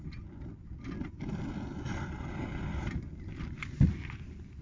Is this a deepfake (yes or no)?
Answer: no